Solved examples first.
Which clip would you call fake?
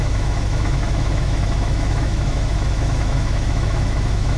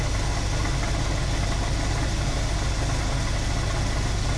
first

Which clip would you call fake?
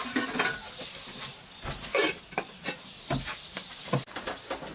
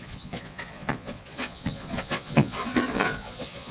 second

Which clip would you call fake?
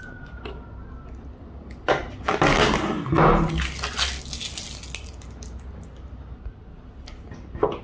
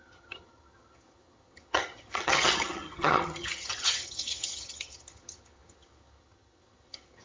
second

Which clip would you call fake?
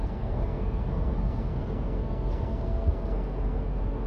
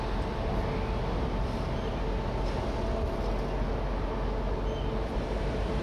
first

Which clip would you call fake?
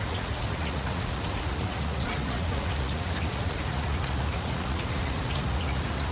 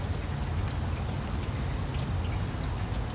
first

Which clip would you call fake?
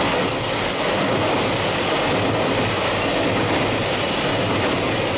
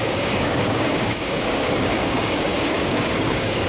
second